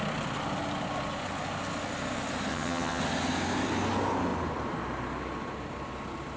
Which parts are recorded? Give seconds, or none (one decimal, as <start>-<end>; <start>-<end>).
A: 0.0-2.5; 3.0-6.4